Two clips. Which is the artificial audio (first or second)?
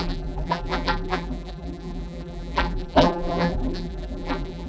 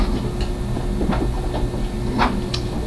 first